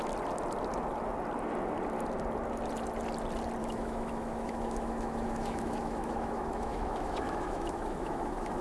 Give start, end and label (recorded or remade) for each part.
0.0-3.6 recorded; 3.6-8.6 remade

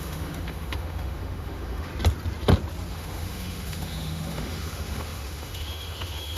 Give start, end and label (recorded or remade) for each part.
0.0-1.9 remade; 1.9-2.9 recorded; 2.9-6.4 remade

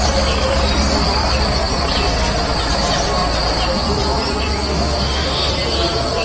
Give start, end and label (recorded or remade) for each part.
0.0-4.7 recorded; 4.7-5.5 remade; 5.5-6.2 recorded

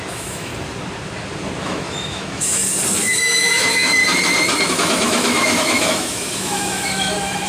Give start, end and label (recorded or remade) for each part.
0.0-0.5 remade; 0.5-1.6 recorded; 1.6-2.6 remade; 2.6-3.2 recorded; 3.2-4.0 remade; 4.0-4.7 recorded; 4.7-7.5 remade

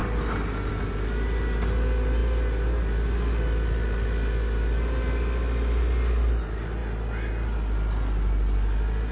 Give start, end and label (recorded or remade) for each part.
0.0-9.1 recorded